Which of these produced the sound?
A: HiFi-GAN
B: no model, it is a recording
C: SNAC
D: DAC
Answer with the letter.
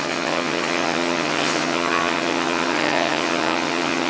A